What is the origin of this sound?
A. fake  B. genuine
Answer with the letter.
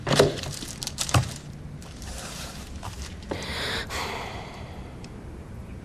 A